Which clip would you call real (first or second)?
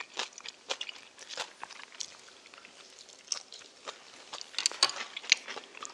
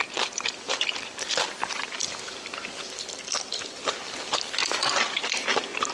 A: first